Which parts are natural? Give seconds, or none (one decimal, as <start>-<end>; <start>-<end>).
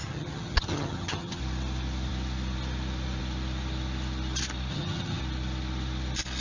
1.4-4.7; 5.2-6.4